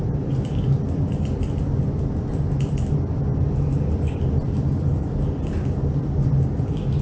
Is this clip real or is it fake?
real